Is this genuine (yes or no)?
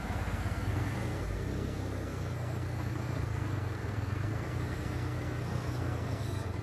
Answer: no